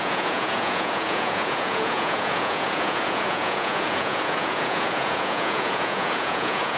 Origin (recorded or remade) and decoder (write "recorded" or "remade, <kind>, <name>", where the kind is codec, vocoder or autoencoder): remade, vocoder, Vocos